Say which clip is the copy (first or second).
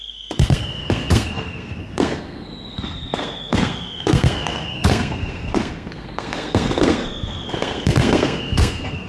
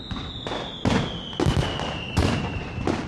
first